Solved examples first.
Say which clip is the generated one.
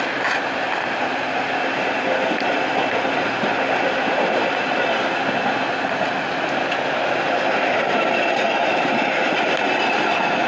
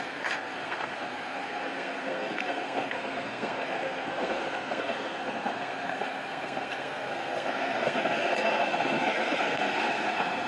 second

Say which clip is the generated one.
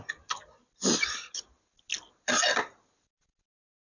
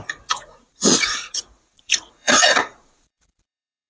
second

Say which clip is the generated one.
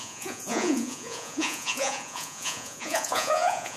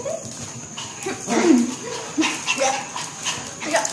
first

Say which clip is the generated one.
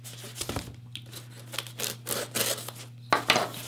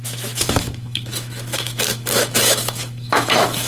second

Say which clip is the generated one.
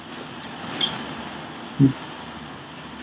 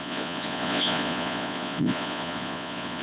second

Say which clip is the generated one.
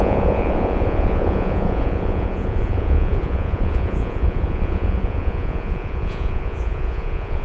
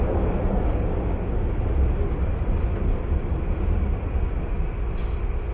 first